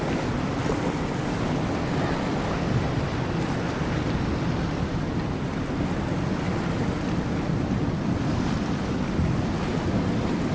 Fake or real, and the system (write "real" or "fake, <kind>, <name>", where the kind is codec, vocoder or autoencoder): real